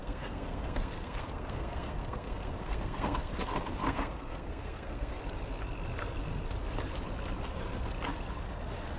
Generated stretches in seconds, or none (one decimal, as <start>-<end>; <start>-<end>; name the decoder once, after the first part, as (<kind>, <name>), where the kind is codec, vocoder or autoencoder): 0.0-3.3 (codec, SNAC); 3.8-5.2